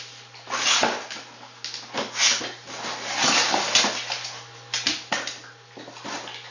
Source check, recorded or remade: recorded